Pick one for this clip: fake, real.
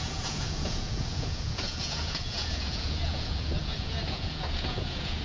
fake